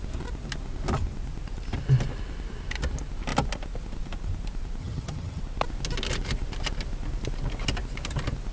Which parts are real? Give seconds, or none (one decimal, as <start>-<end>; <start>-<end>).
0.0-4.8; 5.4-8.5